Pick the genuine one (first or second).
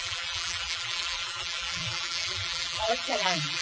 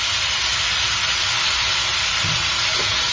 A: second